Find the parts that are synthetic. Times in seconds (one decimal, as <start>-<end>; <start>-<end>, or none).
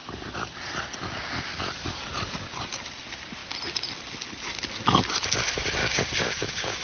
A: 5.8-6.8